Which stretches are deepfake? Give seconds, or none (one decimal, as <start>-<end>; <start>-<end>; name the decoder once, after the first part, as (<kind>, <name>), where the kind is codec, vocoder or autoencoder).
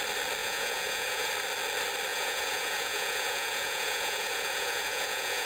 0.4-1.3 (vocoder, Vocos); 2.1-5.5